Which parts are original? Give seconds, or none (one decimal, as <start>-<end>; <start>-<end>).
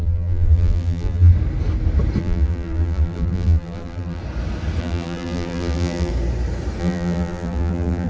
1.3-2.2; 4.2-4.8; 6.1-6.8